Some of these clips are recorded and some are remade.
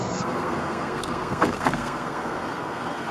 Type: remade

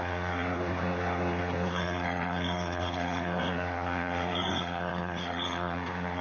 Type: remade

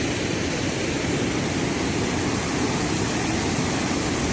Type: recorded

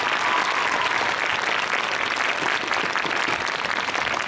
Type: recorded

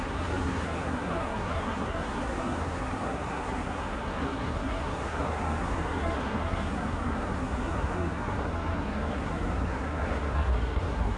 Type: remade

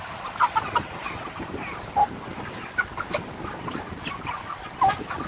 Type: recorded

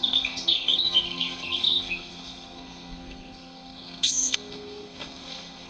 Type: remade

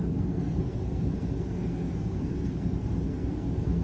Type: remade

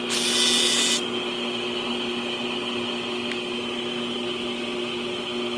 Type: recorded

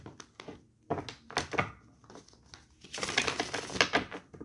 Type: recorded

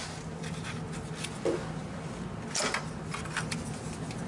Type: recorded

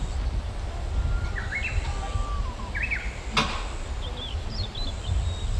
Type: recorded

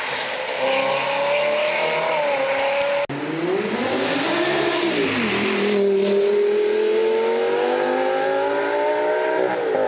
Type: recorded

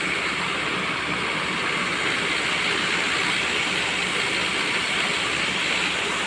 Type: recorded